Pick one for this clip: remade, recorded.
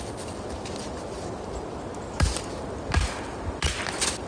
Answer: recorded